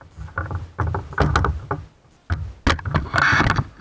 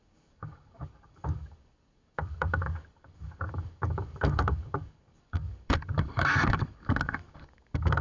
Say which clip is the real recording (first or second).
first